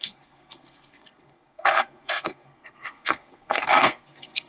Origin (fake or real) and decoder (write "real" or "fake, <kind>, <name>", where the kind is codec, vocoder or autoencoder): fake, codec, SNAC